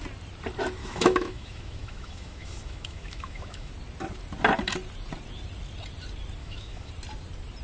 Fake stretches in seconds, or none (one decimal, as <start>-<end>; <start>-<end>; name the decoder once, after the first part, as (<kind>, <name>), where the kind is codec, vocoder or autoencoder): 0.8-3.7 (autoencoder, DAC-VAE); 6.4-6.9